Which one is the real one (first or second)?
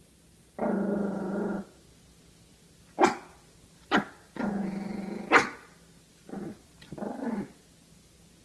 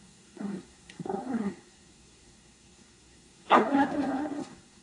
first